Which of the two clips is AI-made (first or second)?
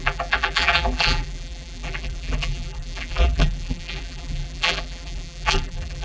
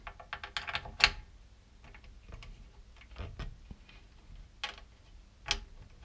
first